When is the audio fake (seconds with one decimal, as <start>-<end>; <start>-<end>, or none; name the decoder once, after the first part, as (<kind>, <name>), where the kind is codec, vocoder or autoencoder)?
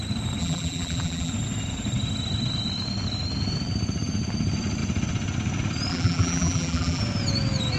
0.4-1.3 (vocoder, BigVGAN v2); 5.9-7.0